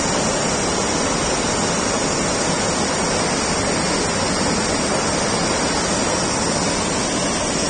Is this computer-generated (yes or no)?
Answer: no